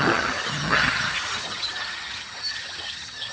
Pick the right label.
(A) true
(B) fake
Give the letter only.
B